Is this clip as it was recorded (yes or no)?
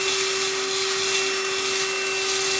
yes